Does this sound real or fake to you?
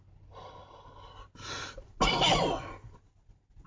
real